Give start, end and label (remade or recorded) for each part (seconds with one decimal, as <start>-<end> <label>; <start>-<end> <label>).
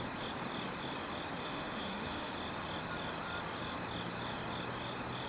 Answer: 0.0-1.4 recorded; 1.4-2.3 remade; 2.3-5.3 recorded